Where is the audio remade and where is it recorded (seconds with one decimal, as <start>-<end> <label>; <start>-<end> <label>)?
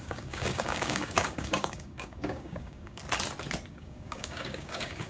0.0-3.0 remade; 3.0-3.7 recorded; 3.7-5.1 remade